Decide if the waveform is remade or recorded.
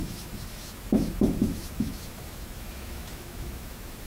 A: remade